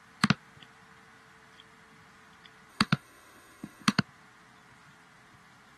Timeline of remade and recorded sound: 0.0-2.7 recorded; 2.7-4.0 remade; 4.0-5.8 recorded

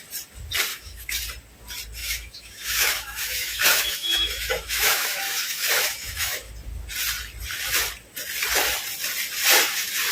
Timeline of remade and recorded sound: 0.0-0.7 recorded; 0.7-1.2 remade; 1.2-2.0 recorded; 2.0-6.5 remade; 6.5-10.1 recorded

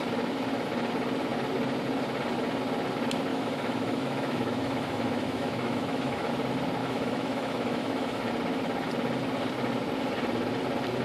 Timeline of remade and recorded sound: 0.0-3.3 recorded; 3.3-6.3 remade; 6.3-6.8 recorded; 6.8-8.3 remade; 8.3-11.0 recorded

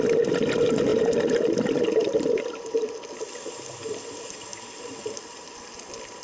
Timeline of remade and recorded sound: 0.0-6.2 recorded

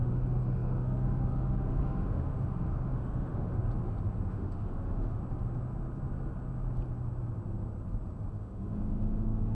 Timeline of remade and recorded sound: 0.0-3.6 remade; 3.6-4.3 recorded; 4.3-5.2 remade; 5.2-8.3 recorded; 8.3-9.5 remade

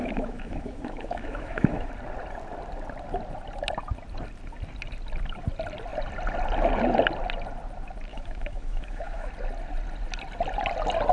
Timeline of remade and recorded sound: 0.0-1.9 remade; 1.9-8.1 recorded; 8.1-9.3 remade; 9.3-11.1 recorded